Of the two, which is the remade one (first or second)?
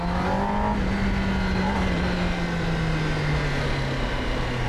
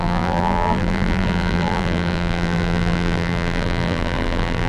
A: second